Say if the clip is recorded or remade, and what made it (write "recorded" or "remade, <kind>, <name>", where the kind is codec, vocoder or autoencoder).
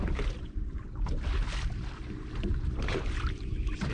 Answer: remade, vocoder, BigVGAN v2